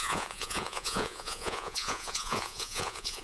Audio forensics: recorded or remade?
remade